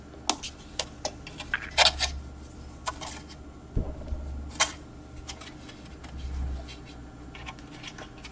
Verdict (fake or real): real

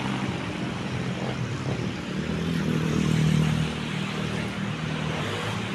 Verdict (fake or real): real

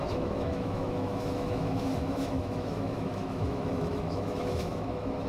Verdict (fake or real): fake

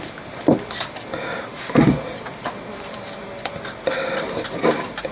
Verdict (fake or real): real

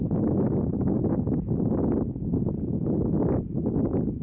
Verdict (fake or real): real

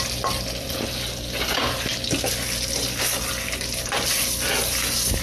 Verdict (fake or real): real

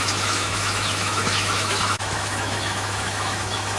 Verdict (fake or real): fake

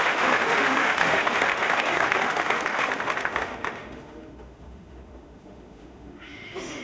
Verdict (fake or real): fake